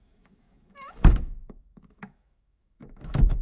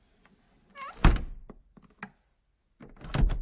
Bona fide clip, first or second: second